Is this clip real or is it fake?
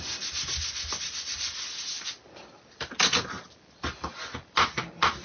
real